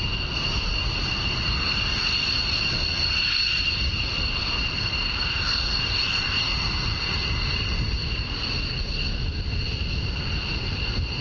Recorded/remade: recorded